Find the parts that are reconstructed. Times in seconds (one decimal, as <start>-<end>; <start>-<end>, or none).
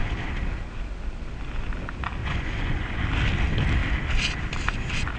2.2-3.0